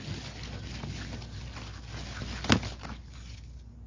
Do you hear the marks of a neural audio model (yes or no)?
no